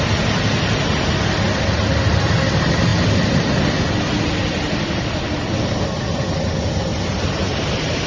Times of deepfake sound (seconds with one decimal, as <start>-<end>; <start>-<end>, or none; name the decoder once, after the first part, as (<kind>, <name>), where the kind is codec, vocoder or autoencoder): none